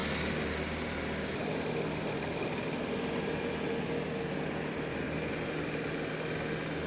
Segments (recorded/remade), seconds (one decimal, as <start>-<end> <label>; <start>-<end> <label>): 0.0-6.9 recorded